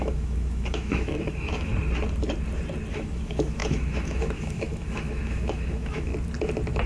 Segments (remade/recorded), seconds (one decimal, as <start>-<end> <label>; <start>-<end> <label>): 0.0-1.7 remade; 1.7-2.9 recorded; 2.9-6.1 remade; 6.1-6.9 recorded